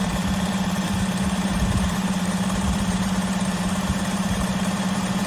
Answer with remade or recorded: remade